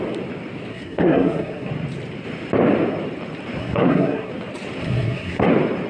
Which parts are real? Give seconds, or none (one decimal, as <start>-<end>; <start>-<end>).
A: 0.0-0.7; 1.7-3.6; 4.3-4.8; 5.5-5.9